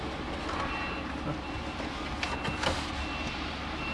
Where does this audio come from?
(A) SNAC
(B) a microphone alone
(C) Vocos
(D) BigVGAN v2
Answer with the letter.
B